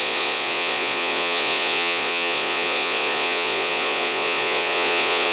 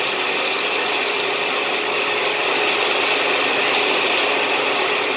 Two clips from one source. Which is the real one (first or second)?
second